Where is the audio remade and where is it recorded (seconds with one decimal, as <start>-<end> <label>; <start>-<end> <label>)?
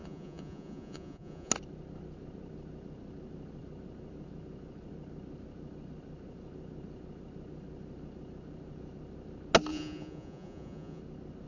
0.0-1.5 remade; 1.5-9.7 recorded; 9.7-11.0 remade; 11.0-11.5 recorded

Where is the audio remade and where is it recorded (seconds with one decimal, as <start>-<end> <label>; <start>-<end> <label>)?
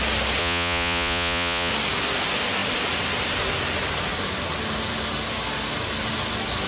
0.0-0.4 recorded; 0.4-1.7 remade; 1.7-6.7 recorded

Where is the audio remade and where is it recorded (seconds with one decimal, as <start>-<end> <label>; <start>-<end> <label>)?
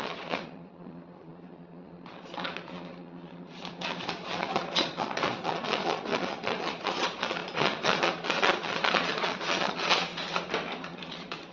0.0-10.1 remade; 10.1-10.8 recorded; 10.8-11.5 remade